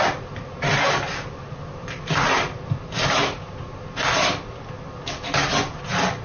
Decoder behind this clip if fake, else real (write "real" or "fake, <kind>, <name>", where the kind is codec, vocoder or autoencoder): real